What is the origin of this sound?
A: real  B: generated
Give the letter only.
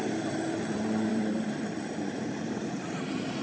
B